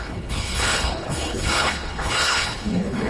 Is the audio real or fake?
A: fake